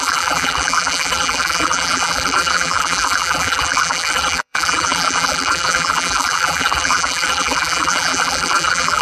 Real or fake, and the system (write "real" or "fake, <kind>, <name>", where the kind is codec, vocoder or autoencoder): fake, vocoder, BigVGAN v2